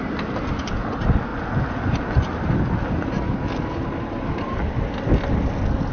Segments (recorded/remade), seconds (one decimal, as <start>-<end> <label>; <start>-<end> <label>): 0.0-5.9 recorded